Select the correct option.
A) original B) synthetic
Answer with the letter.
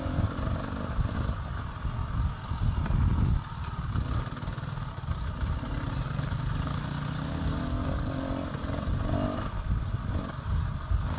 A